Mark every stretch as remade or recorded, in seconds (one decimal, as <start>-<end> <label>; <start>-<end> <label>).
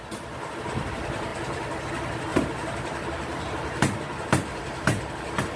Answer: 0.0-1.3 recorded; 1.3-1.9 remade; 1.9-2.3 recorded; 2.3-5.0 remade; 5.0-5.6 recorded